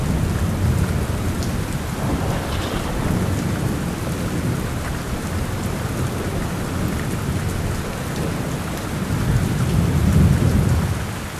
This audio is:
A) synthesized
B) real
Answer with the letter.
B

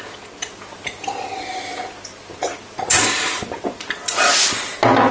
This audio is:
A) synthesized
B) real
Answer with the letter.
B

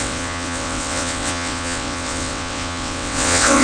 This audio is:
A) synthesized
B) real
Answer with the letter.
A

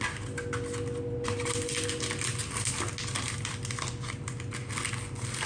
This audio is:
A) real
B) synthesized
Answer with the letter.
A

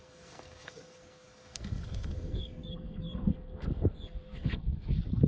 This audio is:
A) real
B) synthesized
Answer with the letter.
B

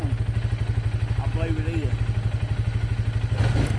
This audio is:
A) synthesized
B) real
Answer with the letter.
B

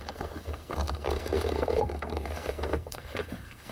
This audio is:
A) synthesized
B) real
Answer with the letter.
A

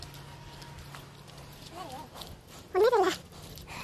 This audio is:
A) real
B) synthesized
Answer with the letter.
A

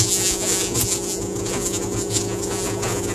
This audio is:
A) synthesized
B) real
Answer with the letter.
A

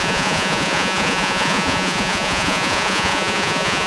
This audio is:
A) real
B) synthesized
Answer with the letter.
B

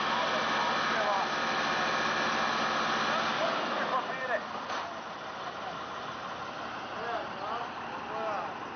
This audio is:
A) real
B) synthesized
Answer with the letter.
A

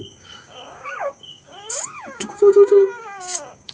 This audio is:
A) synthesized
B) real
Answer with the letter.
A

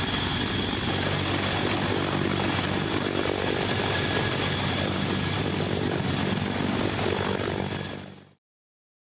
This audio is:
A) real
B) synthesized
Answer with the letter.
A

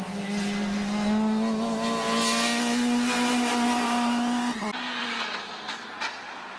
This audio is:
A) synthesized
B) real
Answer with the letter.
B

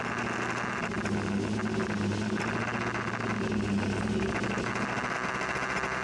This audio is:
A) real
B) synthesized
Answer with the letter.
A